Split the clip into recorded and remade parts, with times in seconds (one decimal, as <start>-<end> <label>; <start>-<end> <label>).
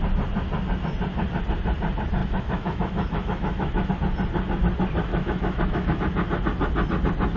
0.0-2.2 recorded; 2.2-3.9 remade; 3.9-5.1 recorded; 5.1-6.0 remade; 6.0-7.4 recorded